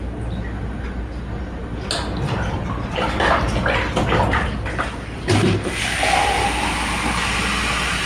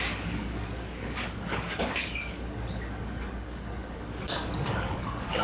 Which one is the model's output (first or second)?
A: second